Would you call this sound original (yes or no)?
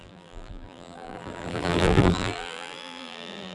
no